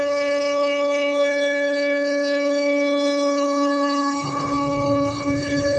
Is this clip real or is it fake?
fake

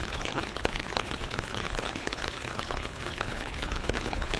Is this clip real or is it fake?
fake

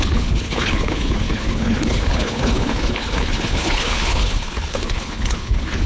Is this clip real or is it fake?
fake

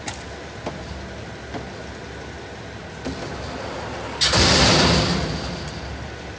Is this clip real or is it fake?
real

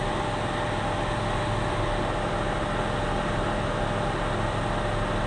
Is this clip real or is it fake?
real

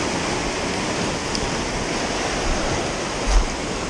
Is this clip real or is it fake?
real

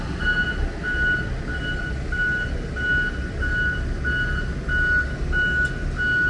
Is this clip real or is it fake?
real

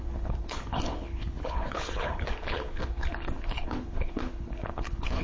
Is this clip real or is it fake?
fake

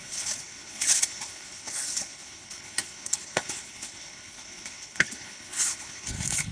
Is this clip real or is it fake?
fake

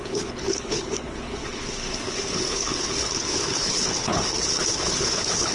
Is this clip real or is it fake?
fake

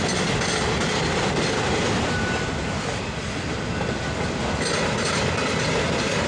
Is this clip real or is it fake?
real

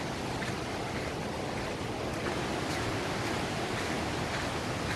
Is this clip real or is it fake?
real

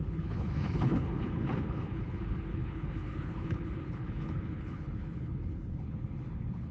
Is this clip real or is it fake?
fake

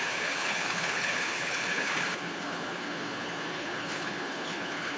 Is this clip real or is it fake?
fake